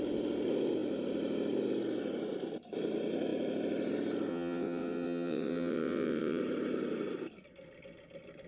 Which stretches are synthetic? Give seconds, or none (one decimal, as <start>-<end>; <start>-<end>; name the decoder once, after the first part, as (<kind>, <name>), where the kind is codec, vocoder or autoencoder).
4.3-6.4 (vocoder, WaveNeXt)